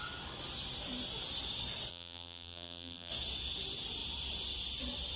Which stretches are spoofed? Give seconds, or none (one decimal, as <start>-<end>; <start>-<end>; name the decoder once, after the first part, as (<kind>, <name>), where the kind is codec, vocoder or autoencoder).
1.9-3.1 (vocoder, BigVGAN v2)